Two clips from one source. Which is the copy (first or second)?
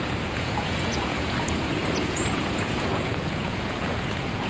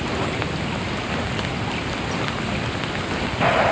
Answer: first